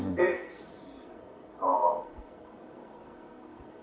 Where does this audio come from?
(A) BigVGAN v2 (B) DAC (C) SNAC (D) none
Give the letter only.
C